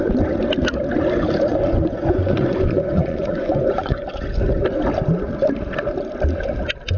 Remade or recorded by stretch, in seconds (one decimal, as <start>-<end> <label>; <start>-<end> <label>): 0.0-1.5 recorded; 1.5-4.1 remade; 4.1-7.0 recorded